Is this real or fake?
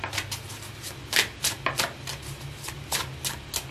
real